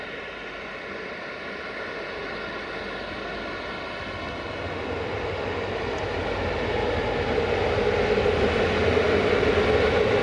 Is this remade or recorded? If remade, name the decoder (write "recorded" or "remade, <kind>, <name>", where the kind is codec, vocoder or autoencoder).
recorded